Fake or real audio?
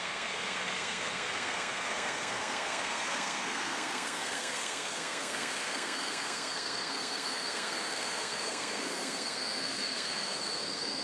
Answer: fake